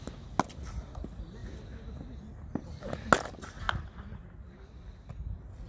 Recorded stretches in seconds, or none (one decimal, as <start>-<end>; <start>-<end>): 0.0-5.7